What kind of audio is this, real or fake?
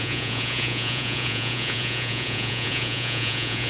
fake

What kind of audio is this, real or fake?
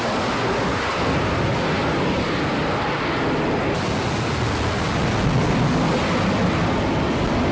real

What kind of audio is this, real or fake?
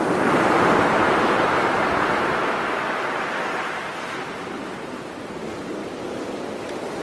real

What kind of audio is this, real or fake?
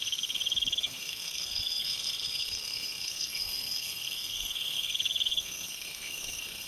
fake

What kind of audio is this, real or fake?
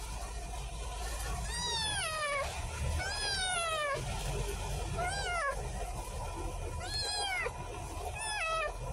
real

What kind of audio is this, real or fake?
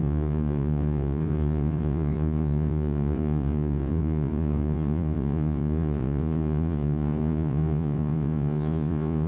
fake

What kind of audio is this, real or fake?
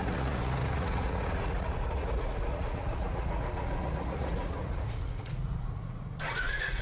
fake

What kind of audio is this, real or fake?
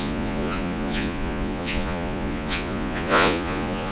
fake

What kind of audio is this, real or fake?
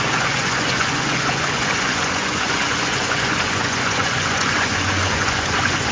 fake